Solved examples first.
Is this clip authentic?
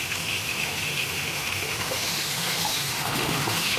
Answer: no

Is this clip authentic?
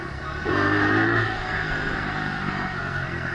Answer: no